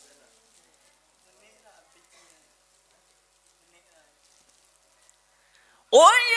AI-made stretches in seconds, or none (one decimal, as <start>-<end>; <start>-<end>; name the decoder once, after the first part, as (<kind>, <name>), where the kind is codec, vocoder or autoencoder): none